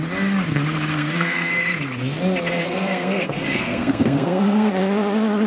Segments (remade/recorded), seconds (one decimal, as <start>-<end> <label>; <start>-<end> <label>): 0.0-0.9 recorded; 0.9-1.5 remade; 1.5-2.6 recorded; 2.6-4.7 remade; 4.7-5.5 recorded